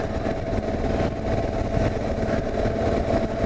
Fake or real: real